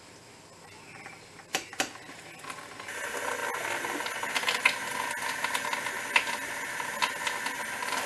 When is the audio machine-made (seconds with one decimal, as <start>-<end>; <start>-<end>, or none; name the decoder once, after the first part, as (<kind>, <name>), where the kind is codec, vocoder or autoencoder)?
none